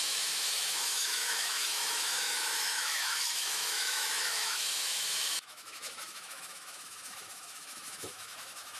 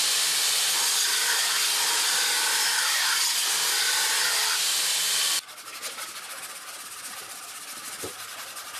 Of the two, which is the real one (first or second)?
second